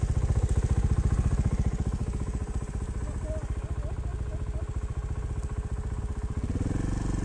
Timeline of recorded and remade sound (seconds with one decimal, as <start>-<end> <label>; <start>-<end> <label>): 0.0-7.2 recorded